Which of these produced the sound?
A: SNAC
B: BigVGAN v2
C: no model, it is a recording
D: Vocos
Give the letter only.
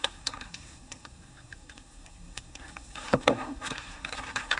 A